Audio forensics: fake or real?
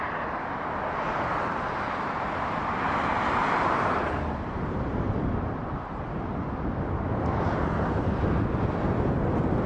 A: real